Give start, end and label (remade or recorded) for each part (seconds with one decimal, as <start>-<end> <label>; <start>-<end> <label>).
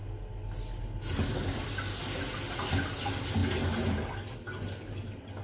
0.0-5.4 recorded